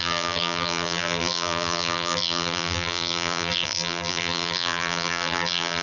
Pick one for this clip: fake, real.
fake